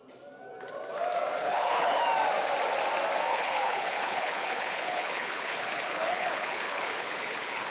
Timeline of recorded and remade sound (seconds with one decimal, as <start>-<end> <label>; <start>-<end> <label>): 0.0-1.4 recorded; 1.4-2.0 remade; 2.0-3.3 recorded; 3.3-7.7 remade